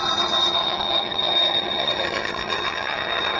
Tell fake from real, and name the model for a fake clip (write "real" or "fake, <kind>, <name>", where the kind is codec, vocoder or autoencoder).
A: fake, vocoder, HiFi-GAN